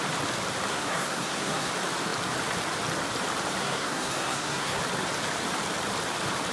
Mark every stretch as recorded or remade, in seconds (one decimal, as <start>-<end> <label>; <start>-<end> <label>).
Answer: 0.0-0.7 recorded; 0.7-1.7 remade; 1.7-3.6 recorded; 3.6-4.8 remade; 4.8-6.5 recorded